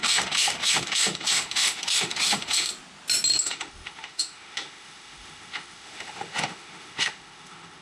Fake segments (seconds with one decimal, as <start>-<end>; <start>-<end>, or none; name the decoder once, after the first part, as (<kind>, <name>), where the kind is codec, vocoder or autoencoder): 0.0-2.7 (autoencoder, DAC-VAE); 3.4-7.8